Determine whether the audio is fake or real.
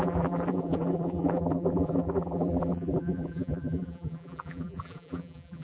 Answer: fake